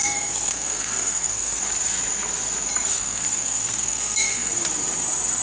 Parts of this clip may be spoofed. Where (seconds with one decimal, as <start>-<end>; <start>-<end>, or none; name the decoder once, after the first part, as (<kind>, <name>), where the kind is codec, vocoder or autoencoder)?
0.0-1.6 (codec, SNAC); 2.9-4.5